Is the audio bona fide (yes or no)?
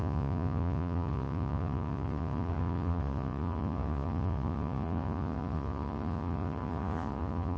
no